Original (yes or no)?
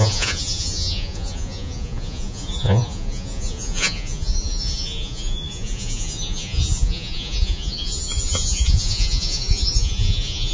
no